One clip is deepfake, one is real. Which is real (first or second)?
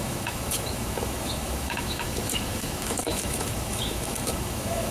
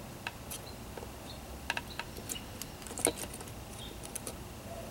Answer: second